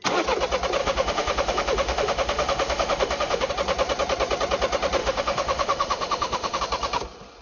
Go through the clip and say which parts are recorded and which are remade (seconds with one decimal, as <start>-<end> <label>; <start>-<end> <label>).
0.0-0.8 recorded; 0.8-3.5 remade; 3.5-5.0 recorded; 5.0-6.6 remade; 6.6-7.4 recorded